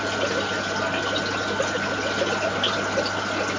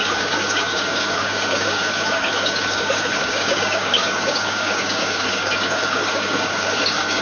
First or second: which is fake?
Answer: second